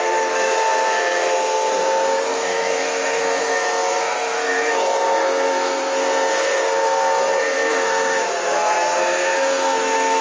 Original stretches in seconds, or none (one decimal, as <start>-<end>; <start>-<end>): none